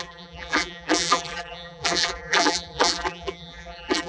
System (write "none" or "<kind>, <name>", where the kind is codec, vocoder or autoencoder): vocoder, BigVGAN v2